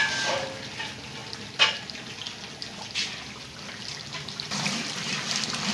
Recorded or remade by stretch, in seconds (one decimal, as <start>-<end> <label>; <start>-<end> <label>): 0.0-5.7 recorded